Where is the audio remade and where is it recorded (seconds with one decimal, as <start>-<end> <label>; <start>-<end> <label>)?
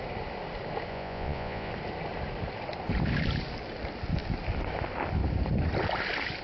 0.0-0.9 recorded; 0.9-1.7 remade; 1.7-6.4 recorded